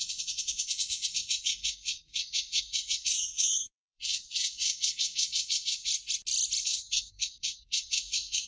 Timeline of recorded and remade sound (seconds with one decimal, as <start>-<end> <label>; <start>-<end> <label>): 0.0-5.9 remade; 5.9-6.6 recorded; 6.6-8.5 remade